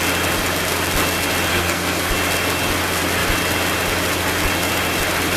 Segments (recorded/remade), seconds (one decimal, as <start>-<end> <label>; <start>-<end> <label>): 0.0-1.5 recorded; 1.5-2.1 remade; 2.1-5.4 recorded

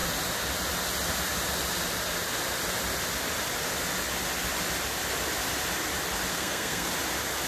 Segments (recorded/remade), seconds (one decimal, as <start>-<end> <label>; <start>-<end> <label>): 0.0-6.3 recorded; 6.3-6.9 remade; 6.9-7.5 recorded

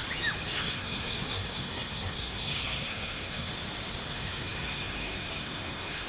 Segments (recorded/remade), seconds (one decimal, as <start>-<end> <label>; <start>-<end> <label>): 0.0-0.5 recorded; 0.5-3.5 remade; 3.5-4.1 recorded; 4.1-6.1 remade

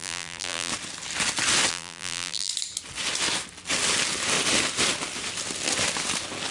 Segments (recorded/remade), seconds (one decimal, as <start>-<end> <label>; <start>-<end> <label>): 0.0-0.7 remade; 0.7-1.7 recorded; 1.7-2.5 remade; 2.5-6.5 recorded

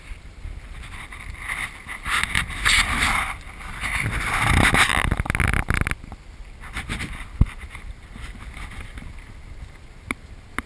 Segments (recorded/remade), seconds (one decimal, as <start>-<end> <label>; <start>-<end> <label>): 0.0-10.7 recorded